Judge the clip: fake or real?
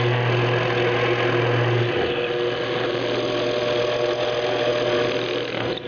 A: real